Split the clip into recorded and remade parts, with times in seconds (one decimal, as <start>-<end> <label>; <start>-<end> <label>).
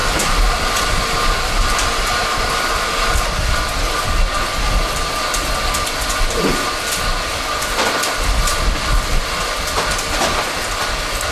0.0-11.3 recorded